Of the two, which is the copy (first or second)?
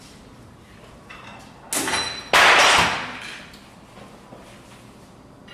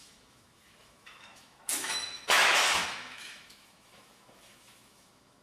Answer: second